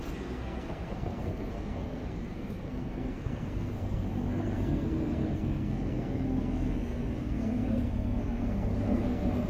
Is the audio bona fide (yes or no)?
no